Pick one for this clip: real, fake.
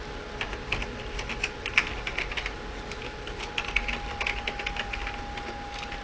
real